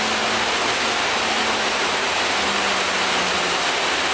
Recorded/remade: recorded